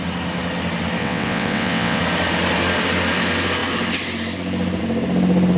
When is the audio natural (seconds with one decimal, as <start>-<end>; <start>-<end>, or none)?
0.0-1.0; 2.0-5.6